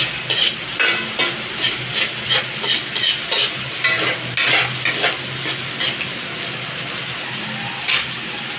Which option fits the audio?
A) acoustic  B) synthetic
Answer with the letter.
A